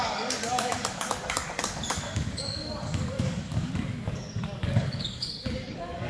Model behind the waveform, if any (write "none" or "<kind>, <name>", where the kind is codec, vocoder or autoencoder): codec, DAC